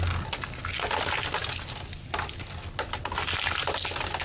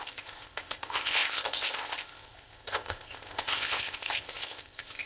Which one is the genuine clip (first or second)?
first